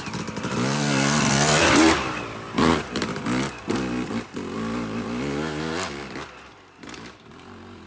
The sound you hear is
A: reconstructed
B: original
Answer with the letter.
B